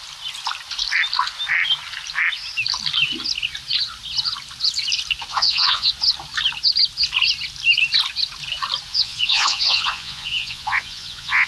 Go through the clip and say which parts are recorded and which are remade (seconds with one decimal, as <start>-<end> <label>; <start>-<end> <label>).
0.0-5.3 recorded; 5.3-5.9 remade; 5.9-8.9 recorded; 8.9-11.5 remade